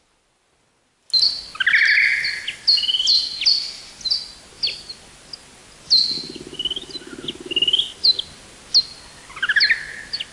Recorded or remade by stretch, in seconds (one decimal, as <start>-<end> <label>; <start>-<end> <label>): 0.0-10.3 recorded